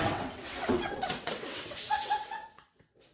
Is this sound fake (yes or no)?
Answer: yes